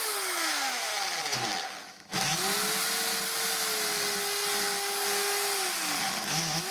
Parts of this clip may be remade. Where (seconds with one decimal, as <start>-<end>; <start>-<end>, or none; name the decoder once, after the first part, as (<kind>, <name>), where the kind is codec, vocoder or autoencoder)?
0.0-0.9 (autoencoder, DAC-VAE); 1.9-2.3; 6.3-6.7